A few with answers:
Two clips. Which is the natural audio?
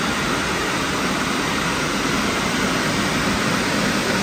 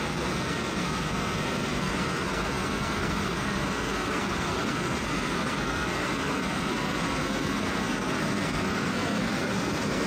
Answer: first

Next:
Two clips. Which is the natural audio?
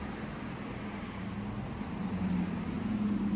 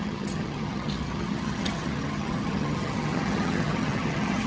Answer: first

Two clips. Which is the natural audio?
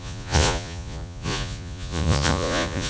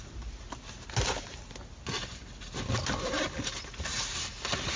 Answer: second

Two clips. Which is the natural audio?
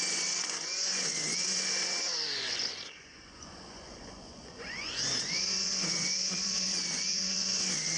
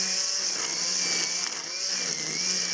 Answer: second